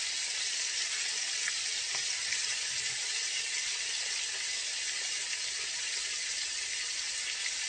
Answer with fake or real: real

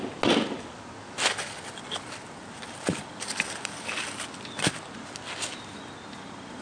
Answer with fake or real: real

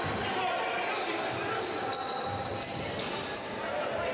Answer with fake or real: real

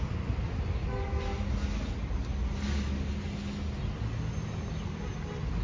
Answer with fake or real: real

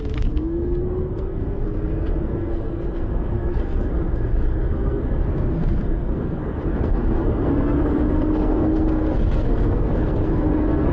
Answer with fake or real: fake